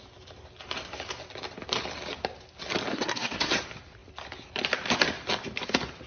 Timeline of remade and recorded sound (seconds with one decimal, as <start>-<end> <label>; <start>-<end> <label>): 0.0-2.9 recorded; 2.9-3.5 remade; 3.5-6.1 recorded